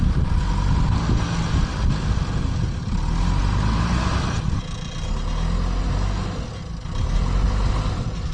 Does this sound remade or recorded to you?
recorded